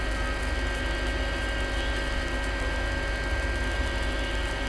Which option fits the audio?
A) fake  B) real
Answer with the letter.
B